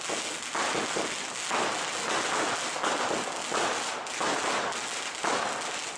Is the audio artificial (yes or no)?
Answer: no